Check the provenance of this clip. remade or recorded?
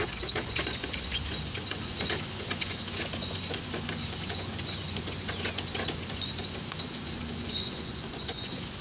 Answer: remade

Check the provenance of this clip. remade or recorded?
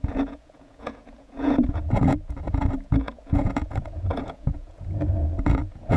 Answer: remade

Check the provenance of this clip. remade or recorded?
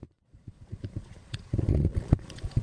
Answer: remade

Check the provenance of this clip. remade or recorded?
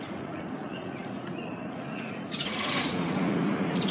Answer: remade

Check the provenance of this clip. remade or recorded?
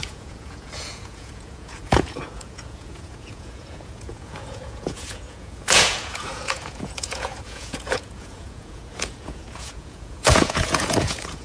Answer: remade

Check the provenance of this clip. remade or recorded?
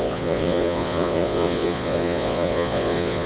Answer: remade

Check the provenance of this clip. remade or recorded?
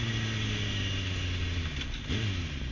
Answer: recorded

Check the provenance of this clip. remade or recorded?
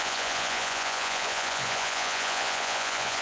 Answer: remade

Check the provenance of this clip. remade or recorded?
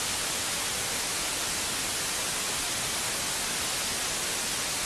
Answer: recorded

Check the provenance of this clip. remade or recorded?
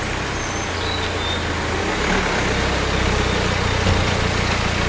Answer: recorded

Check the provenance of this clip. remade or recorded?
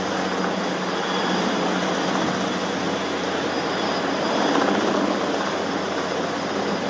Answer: recorded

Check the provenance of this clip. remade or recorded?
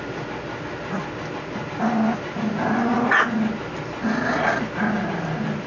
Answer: recorded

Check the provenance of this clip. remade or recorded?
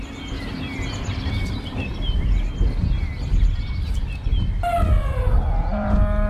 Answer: recorded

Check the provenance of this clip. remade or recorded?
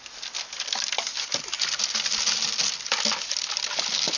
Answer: recorded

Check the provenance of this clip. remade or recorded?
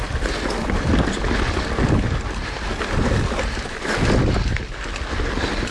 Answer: recorded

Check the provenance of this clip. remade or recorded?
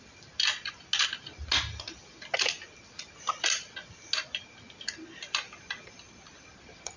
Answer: recorded